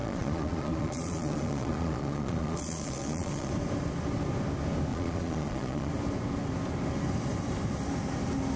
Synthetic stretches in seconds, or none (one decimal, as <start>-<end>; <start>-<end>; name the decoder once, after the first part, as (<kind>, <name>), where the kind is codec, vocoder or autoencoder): 0.0-3.5 (vocoder, Vocos); 4.9-5.9